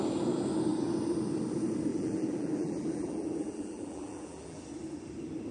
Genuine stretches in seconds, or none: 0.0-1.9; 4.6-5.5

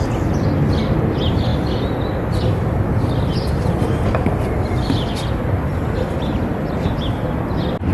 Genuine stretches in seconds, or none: 0.0-7.9

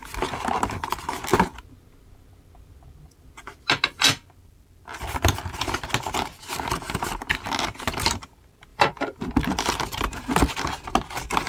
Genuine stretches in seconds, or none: 0.0-8.7; 9.3-11.5